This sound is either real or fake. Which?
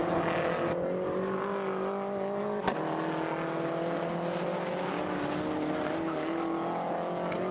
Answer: real